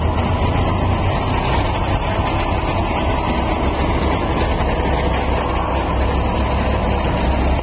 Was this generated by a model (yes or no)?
no